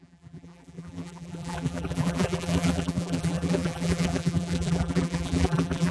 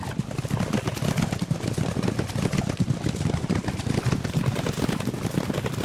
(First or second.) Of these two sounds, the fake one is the first